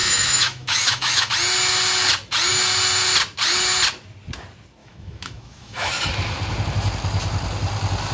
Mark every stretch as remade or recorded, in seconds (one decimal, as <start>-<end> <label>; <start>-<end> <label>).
0.0-1.3 remade; 1.3-4.8 recorded; 4.8-5.9 remade; 5.9-8.1 recorded